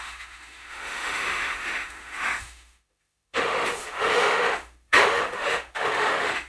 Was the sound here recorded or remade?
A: remade